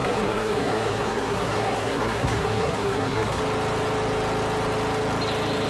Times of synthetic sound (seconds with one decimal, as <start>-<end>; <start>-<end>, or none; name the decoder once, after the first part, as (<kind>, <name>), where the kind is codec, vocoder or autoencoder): 0.0-3.4 (codec, SNAC)